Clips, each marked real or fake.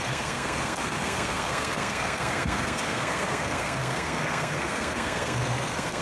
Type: fake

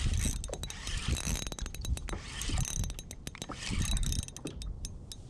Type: real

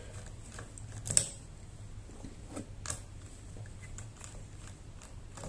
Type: real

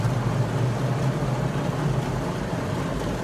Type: real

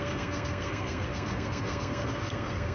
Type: fake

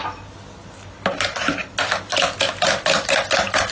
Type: real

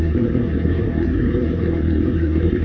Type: fake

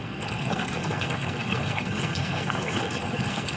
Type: fake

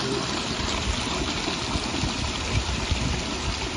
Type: real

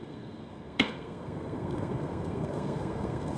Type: fake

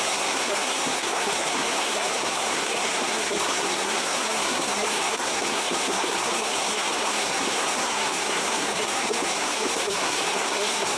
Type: fake